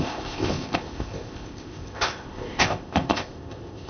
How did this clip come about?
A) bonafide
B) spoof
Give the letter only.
B